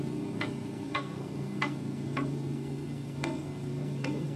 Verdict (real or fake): fake